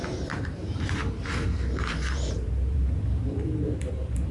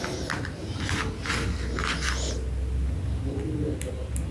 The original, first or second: second